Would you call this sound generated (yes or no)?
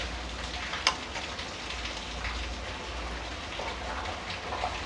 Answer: no